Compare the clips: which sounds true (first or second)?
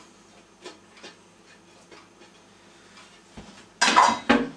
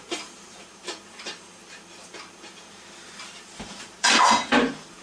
first